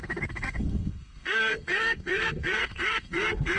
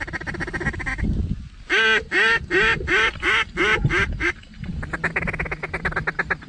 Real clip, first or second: second